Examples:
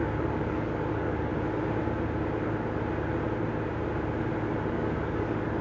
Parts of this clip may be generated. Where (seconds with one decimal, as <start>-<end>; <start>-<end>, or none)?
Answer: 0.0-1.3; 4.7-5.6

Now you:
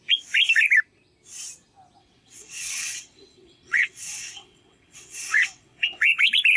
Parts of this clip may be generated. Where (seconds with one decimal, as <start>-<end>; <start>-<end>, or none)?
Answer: 2.0-6.0

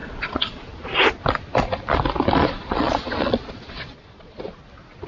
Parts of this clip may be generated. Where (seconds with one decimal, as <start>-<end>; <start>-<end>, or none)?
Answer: 0.0-0.7; 2.4-4.4

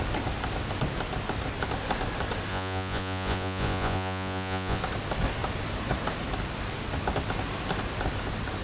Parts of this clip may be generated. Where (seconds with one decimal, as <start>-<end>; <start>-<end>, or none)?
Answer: 2.5-4.8

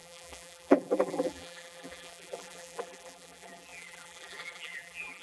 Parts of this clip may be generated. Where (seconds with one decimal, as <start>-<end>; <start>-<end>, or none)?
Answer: 0.0-5.2